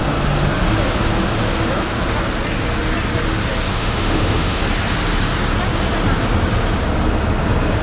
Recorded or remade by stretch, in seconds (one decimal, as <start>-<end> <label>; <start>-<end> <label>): 0.0-3.7 recorded; 3.7-4.6 remade; 4.6-7.8 recorded